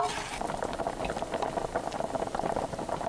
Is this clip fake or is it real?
fake